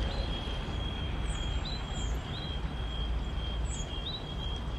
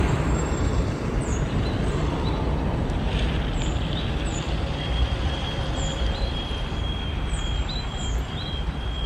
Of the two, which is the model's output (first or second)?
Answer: second